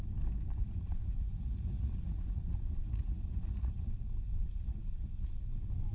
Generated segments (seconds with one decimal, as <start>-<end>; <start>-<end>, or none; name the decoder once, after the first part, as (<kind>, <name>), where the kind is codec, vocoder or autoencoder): 0.6-3.9 (vocoder, Vocos); 4.4-5.3